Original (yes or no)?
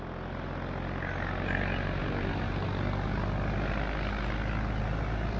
yes